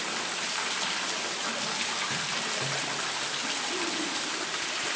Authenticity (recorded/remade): recorded